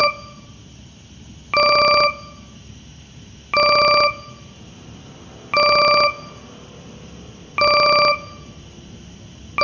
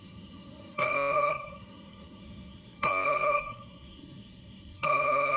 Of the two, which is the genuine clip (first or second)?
first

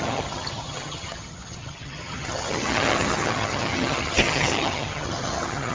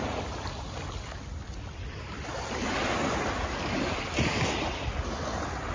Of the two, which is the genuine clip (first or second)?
second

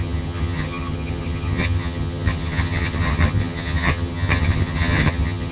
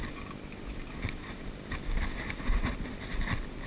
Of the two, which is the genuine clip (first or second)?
second